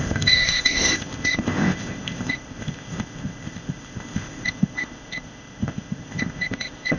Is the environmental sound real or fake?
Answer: fake